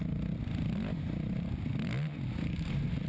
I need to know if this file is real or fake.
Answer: real